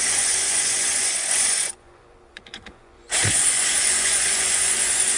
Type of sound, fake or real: fake